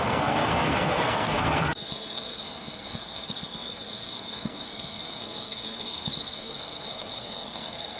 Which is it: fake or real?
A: fake